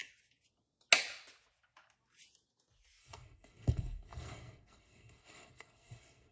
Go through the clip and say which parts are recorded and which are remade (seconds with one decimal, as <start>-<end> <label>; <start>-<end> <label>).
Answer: 0.0-3.0 recorded; 3.0-6.3 remade